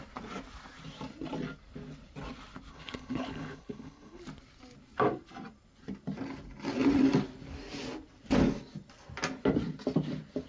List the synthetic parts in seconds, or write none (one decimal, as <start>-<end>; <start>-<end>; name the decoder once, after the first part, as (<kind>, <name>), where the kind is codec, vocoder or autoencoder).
2.7-4.2 (codec, HILCodec)